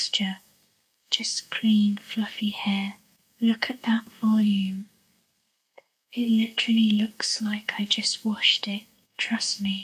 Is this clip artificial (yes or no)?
yes